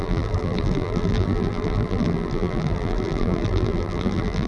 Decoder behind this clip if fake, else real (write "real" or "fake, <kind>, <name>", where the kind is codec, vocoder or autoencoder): fake, vocoder, BigVGAN v2